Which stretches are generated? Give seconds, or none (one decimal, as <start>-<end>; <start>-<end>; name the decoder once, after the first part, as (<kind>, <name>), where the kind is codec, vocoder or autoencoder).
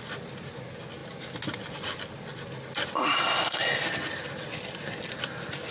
none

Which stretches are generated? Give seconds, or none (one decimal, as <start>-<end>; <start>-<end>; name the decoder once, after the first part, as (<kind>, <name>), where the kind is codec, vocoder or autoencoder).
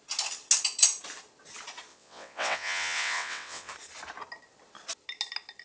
1.9-3.7 (vocoder, WaveNeXt)